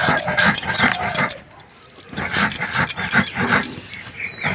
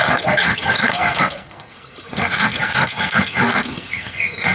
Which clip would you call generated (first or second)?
second